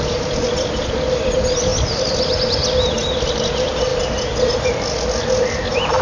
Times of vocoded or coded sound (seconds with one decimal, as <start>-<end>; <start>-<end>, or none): 0.0-6.0